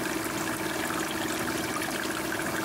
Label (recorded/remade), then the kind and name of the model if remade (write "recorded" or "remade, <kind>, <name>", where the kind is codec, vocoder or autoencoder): recorded